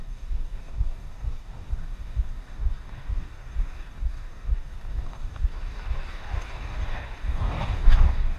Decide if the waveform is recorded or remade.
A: remade